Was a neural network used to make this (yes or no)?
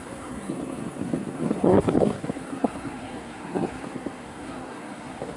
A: yes